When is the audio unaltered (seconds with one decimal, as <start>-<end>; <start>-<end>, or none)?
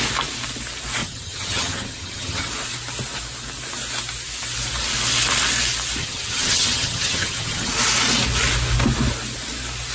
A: 0.0-1.0; 2.5-6.0; 7.7-9.9